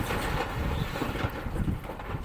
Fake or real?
real